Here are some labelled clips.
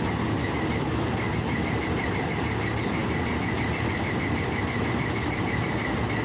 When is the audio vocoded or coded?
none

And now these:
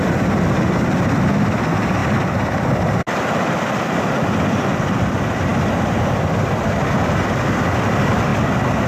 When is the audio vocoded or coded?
none